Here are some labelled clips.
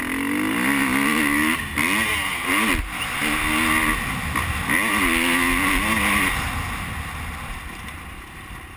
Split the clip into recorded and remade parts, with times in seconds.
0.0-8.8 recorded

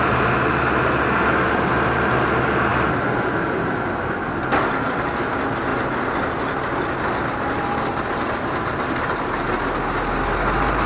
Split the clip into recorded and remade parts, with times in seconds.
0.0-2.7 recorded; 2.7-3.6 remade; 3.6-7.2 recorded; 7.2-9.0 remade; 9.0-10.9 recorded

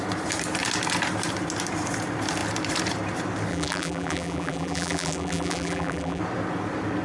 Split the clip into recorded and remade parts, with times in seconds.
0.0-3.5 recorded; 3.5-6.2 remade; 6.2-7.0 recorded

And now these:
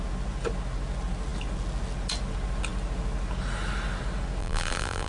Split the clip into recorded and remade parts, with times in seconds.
0.0-4.4 recorded; 4.4-5.1 remade

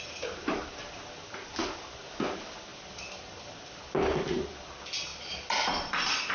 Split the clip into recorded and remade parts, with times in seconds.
0.0-2.7 recorded; 2.7-3.5 remade; 3.5-5.1 recorded; 5.1-6.3 remade